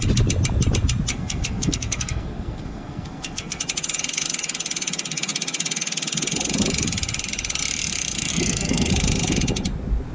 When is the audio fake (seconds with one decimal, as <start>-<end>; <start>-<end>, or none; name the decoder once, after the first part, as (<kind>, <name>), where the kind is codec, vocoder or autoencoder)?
1.1-3.6 (codec, SNAC); 8.3-8.9